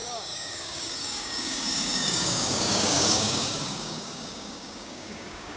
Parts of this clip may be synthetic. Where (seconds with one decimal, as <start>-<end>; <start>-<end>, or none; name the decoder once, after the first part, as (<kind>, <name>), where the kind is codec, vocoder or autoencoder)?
0.0-5.6 (codec, DAC)